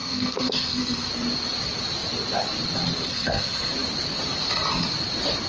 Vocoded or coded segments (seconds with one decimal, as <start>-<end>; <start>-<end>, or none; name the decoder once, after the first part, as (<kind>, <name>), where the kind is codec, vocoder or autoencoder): 0.0-1.1 (codec, SNAC); 3.1-3.7